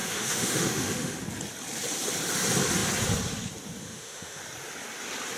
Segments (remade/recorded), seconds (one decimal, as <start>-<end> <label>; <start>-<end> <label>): 0.0-1.2 remade; 1.2-3.8 recorded; 3.8-4.4 remade; 4.4-5.4 recorded